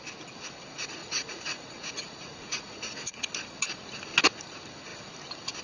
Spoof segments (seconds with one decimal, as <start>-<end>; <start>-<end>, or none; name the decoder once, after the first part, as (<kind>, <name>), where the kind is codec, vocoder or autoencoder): 1.0-3.2 (vocoder, Vocos)